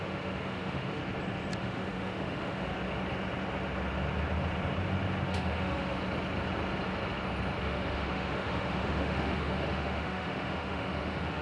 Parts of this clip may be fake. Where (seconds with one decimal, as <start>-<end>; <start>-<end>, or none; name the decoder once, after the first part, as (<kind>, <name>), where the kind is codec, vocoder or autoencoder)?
0.0-1.0 (autoencoder, DAC-VAE); 1.6-2.7; 5.3-6.0; 7.6-11.4